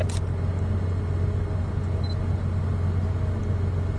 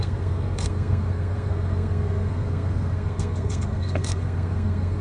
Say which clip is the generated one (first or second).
second